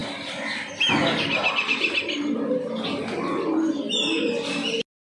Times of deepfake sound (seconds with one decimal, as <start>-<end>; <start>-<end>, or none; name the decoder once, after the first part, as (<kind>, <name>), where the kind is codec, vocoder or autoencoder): none

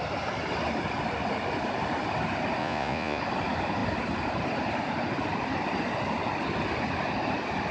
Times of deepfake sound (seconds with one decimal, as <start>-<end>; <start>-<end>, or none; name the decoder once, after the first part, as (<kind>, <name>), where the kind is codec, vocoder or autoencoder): 2.6-3.2 (vocoder, Vocos)